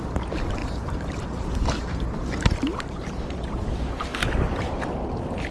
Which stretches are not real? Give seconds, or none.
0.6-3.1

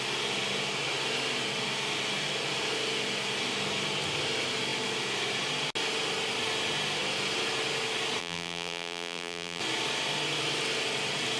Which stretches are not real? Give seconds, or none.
8.2-9.6

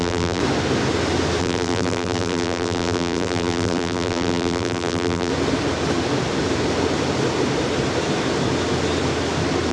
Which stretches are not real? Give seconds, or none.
0.0-0.4; 1.4-5.3

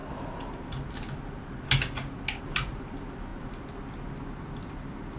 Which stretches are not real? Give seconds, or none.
2.4-3.3

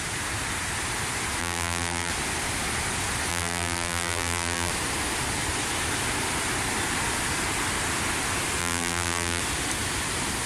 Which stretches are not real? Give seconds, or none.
1.4-2.1; 3.3-4.7; 8.6-9.4

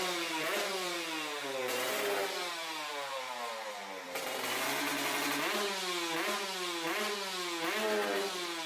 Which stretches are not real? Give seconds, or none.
0.0-4.9; 8.2-8.7

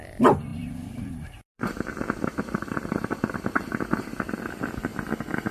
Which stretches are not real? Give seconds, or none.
0.5-3.8

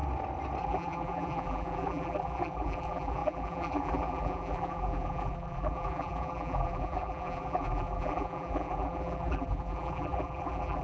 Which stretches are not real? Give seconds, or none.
0.6-10.8